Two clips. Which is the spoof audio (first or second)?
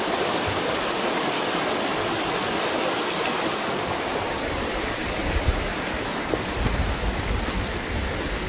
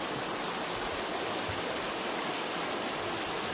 first